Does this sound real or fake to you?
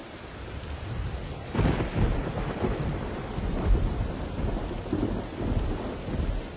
fake